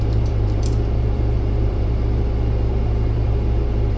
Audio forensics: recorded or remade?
remade